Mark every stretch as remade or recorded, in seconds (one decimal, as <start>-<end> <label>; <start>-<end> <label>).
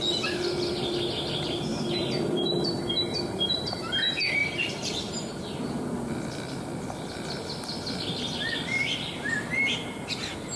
0.0-1.7 recorded; 1.7-2.9 remade; 2.9-4.4 recorded; 4.4-5.6 remade; 5.6-10.6 recorded